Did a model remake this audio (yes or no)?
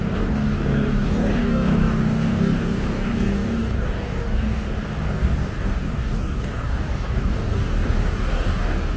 yes